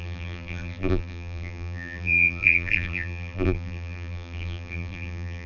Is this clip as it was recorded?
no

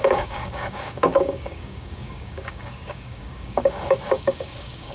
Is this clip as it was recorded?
no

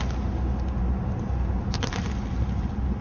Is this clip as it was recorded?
yes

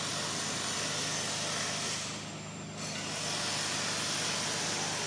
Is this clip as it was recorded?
yes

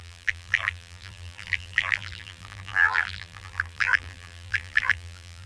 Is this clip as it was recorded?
no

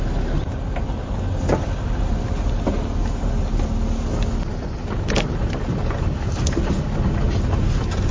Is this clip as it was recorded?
yes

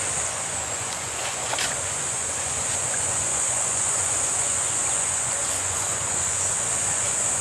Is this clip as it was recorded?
no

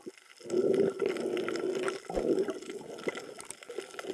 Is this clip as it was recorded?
yes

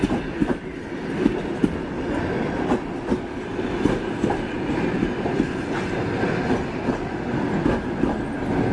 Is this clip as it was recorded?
yes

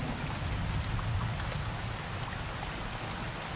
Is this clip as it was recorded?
yes